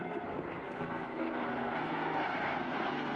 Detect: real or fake fake